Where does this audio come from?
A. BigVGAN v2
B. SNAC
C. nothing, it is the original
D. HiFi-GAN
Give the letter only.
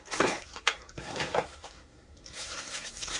B